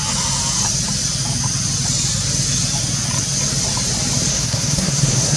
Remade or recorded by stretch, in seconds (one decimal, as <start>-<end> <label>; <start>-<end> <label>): 0.0-4.3 recorded; 4.3-5.4 remade